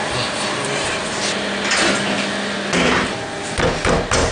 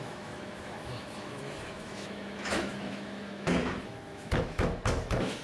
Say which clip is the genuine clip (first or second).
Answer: first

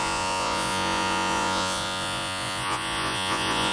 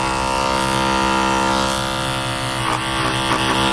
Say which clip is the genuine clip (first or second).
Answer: second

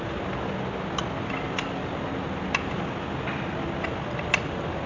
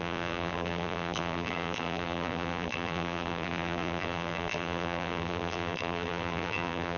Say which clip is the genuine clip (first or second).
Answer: first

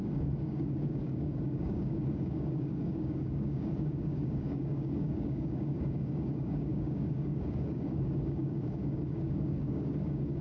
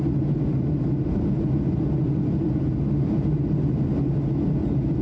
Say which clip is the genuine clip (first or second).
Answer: second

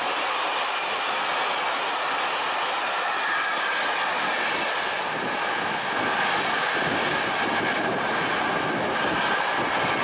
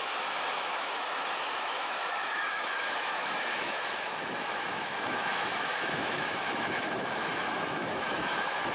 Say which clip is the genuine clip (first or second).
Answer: first